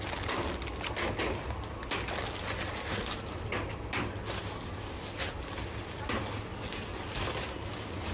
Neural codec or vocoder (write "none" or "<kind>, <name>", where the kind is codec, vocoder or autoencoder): none